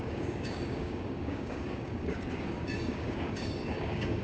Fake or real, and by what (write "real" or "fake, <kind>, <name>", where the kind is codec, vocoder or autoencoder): fake, codec, DAC